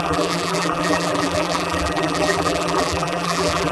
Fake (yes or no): yes